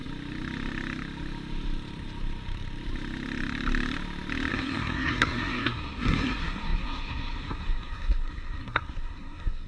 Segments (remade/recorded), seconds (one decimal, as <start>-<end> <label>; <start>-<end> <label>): 0.0-4.5 recorded; 4.5-9.7 remade